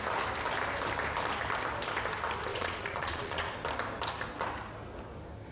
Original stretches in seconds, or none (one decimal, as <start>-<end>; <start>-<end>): 0.0-2.5; 3.5-5.5